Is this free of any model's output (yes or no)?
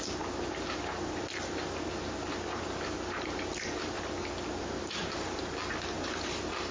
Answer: yes